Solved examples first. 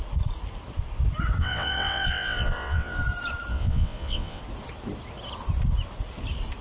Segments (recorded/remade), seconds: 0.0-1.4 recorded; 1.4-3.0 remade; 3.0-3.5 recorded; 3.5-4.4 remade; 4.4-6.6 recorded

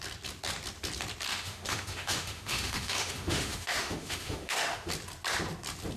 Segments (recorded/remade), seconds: 0.0-1.3 recorded; 1.3-4.9 remade; 4.9-6.0 recorded

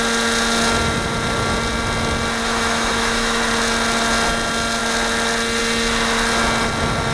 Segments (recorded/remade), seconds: 0.0-2.4 recorded; 2.4-3.4 remade; 3.4-7.1 recorded

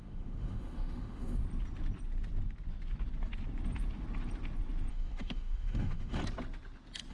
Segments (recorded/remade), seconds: 0.0-1.4 remade; 1.4-4.9 recorded; 4.9-6.2 remade; 6.2-7.1 recorded

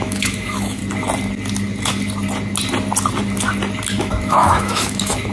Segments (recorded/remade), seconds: 0.0-0.8 remade; 0.8-4.0 recorded; 4.0-5.3 remade

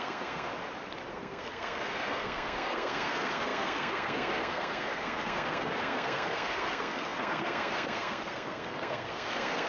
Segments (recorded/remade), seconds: 0.0-0.5 remade; 0.5-1.1 recorded; 1.1-9.7 remade